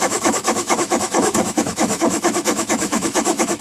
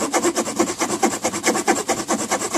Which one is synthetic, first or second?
first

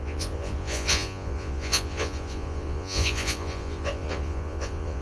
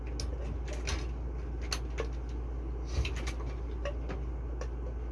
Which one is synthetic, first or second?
first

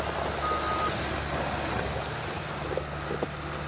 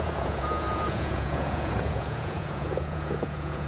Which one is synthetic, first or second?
second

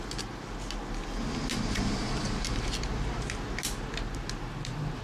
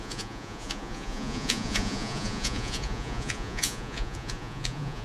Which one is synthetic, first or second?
second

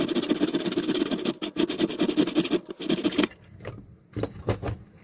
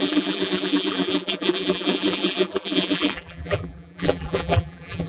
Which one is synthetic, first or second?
second